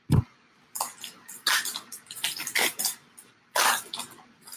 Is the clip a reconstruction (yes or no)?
no